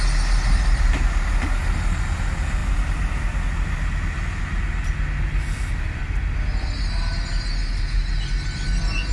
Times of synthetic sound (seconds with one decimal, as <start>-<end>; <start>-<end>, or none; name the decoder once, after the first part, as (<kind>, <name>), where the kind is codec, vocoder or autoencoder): none